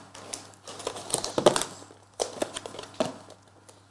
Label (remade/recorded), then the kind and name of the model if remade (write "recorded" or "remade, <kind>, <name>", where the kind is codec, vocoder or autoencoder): recorded